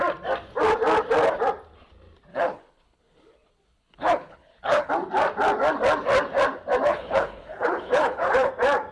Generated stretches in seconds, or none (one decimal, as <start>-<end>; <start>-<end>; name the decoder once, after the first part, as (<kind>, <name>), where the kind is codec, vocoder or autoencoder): 2.3-4.9 (codec, HILCodec); 6.9-8.5